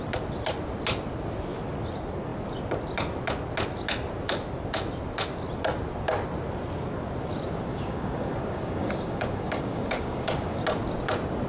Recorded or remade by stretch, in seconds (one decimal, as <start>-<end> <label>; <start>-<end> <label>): 0.0-7.7 recorded; 7.7-10.6 remade; 10.6-11.5 recorded